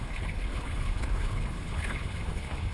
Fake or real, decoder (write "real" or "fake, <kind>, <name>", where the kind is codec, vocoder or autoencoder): fake, codec, HILCodec